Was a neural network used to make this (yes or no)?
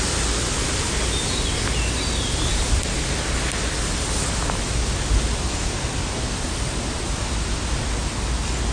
no